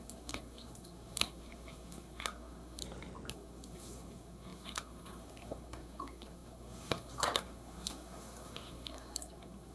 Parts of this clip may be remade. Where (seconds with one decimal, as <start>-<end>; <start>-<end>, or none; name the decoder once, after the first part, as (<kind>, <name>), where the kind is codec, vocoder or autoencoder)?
0.0-2.8 (codec, SNAC); 3.3-9.7